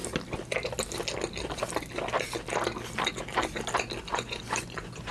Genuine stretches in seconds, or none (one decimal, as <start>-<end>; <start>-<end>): 0.0-4.1